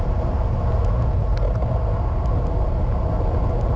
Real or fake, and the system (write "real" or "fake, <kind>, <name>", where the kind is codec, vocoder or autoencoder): real